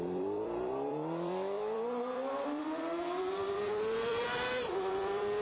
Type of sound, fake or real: fake